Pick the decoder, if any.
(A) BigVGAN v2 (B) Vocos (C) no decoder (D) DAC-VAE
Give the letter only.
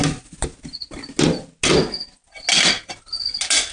C